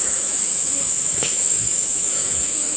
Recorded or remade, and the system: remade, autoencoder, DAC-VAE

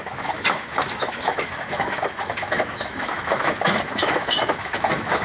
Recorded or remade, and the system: remade, autoencoder, DAC-VAE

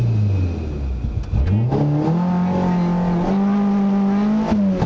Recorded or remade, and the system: recorded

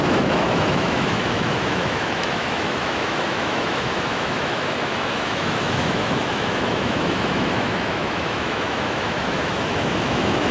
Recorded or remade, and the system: remade, autoencoder, DAC-VAE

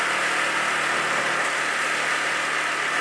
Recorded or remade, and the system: recorded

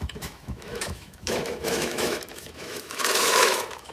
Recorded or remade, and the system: remade, autoencoder, DAC-VAE